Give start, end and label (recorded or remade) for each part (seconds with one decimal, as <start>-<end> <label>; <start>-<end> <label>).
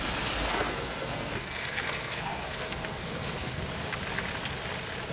0.0-0.5 recorded; 0.5-3.6 remade; 3.6-5.1 recorded